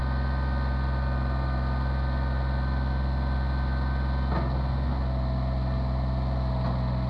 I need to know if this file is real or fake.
real